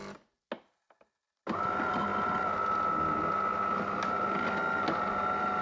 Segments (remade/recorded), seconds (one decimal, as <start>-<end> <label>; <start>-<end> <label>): 0.0-5.6 recorded